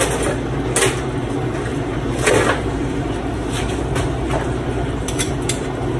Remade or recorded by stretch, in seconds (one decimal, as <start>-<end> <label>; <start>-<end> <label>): 0.0-1.7 recorded; 1.7-5.3 remade; 5.3-6.0 recorded

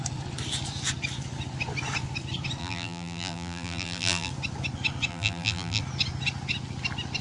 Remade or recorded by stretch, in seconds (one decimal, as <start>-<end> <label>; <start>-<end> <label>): 0.0-2.6 recorded; 2.6-4.3 remade; 4.3-5.1 recorded; 5.1-5.8 remade; 5.8-7.2 recorded

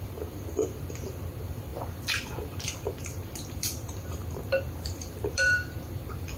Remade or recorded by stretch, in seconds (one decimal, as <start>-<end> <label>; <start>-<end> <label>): 0.0-4.2 remade; 4.2-4.8 recorded; 4.8-6.4 remade

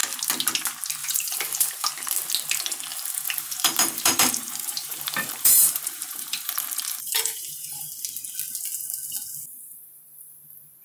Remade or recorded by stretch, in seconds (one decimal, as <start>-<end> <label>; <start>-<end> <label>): 0.0-1.0 recorded; 1.0-1.9 remade; 1.9-2.9 recorded; 2.9-7.9 remade; 7.9-10.8 recorded

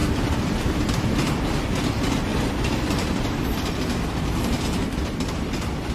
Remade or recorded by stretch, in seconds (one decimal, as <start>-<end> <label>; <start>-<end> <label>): 0.0-0.9 remade; 0.9-2.3 recorded; 2.3-5.9 remade

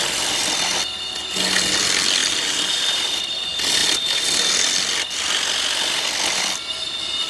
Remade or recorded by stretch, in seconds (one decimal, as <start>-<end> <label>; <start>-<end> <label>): 0.0-2.2 recorded; 2.2-3.4 remade; 3.4-3.8 recorded; 3.8-4.5 remade; 4.5-7.3 recorded